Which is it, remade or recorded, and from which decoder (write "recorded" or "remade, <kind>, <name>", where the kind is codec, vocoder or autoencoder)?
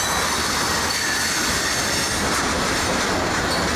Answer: recorded